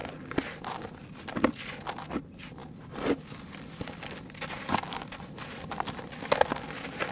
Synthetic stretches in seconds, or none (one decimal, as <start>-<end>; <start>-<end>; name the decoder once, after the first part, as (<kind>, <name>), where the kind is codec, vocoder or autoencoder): none